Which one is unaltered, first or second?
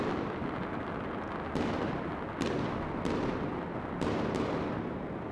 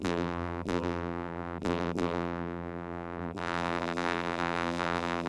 first